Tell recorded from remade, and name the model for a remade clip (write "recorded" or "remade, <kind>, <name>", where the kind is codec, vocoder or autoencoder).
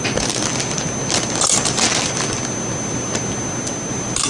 recorded